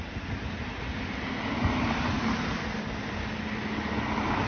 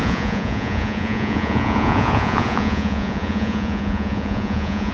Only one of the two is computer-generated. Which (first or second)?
second